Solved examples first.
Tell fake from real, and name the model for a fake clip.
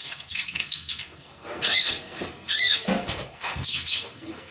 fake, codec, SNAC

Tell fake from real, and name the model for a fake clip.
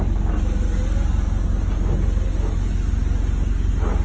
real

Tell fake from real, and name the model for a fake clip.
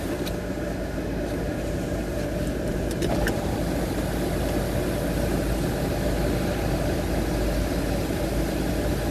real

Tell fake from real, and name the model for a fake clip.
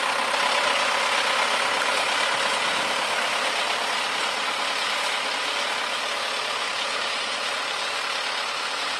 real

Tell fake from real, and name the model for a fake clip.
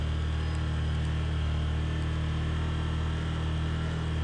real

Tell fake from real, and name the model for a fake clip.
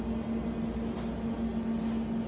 real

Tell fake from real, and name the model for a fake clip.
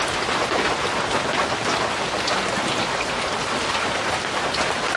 real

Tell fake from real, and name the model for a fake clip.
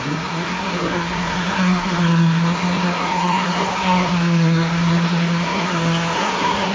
fake, codec, SNAC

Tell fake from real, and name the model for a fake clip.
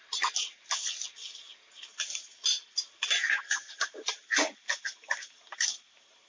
real